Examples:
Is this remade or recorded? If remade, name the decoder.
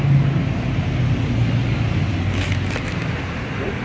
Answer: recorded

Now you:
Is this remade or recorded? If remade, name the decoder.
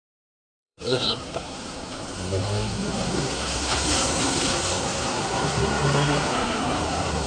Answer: remade, codec, SNAC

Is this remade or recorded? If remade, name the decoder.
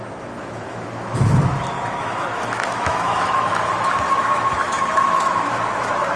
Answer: remade, autoencoder, DAC-VAE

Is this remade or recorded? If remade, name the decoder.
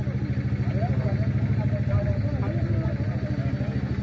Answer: recorded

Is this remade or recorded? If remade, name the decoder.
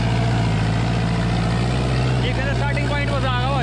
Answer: recorded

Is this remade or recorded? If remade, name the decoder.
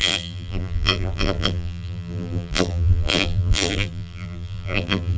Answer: remade, vocoder, BigVGAN v2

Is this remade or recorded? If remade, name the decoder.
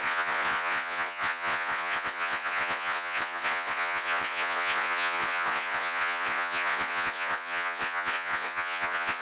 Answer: remade, vocoder, Vocos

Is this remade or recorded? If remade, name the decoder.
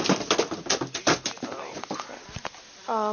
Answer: recorded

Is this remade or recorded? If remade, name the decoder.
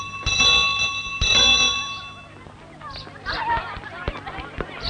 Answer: recorded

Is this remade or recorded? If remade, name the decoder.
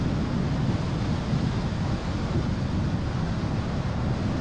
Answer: recorded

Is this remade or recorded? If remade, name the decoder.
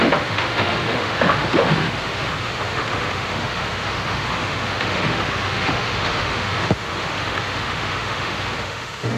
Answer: remade, autoencoder, DAC-VAE